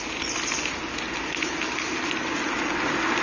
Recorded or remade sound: recorded